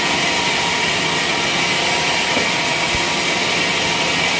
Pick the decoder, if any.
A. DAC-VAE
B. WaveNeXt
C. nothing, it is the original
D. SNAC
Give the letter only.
C